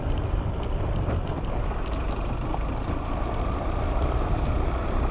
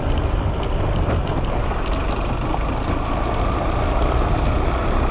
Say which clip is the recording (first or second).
second